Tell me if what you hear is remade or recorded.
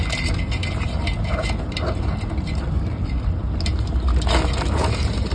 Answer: recorded